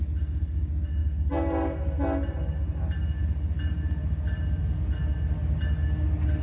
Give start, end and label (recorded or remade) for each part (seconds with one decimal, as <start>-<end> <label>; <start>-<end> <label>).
0.0-6.4 recorded